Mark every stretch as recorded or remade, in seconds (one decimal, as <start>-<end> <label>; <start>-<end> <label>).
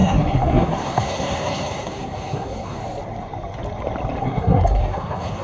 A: 0.0-2.8 remade; 2.8-4.2 recorded; 4.2-5.4 remade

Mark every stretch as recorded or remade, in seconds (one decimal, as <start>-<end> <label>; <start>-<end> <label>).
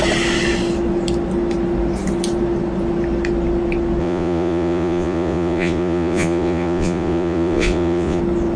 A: 0.0-4.0 recorded; 4.0-8.2 remade; 8.2-8.6 recorded